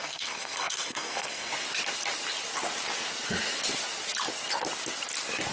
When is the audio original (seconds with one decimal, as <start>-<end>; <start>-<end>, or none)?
1.5-5.5